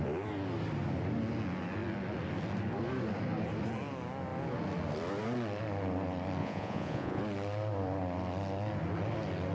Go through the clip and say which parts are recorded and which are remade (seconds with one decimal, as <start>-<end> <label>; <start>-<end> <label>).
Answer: 0.0-6.4 recorded; 6.4-7.2 remade; 7.2-9.5 recorded